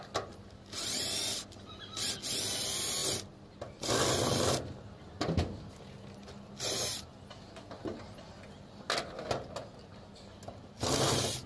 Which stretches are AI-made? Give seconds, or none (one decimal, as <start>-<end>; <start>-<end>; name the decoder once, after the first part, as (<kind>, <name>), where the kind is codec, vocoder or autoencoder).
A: 7.8-8.9 (vocoder, BigVGAN v2)